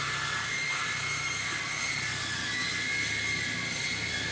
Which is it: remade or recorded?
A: recorded